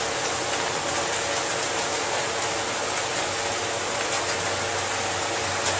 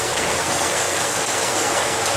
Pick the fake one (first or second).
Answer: second